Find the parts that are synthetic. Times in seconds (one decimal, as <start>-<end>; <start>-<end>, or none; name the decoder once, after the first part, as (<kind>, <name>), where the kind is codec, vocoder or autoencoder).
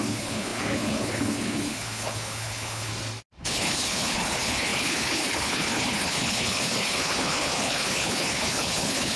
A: 0.0-2.9 (codec, HILCodec); 3.4-9.2